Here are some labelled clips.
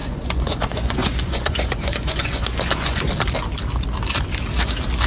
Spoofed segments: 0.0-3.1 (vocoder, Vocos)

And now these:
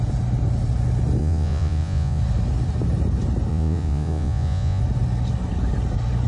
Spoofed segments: 1.2-2.2 (vocoder, Vocos); 3.5-4.8

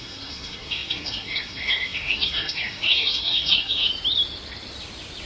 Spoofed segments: 0.0-3.9 (codec, SNAC)